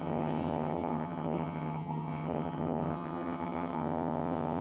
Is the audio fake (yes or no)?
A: yes